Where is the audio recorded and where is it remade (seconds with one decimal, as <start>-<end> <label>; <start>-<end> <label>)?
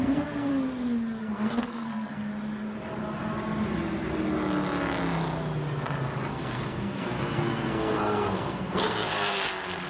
0.0-0.5 remade; 0.5-1.2 recorded; 1.2-2.3 remade; 2.3-6.2 recorded; 6.2-9.9 remade